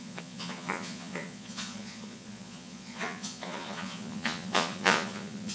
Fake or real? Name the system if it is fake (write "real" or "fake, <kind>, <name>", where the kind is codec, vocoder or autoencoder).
fake, vocoder, Vocos